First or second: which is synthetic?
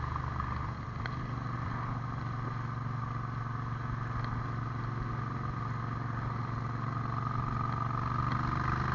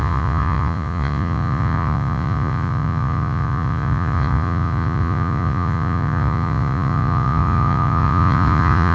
second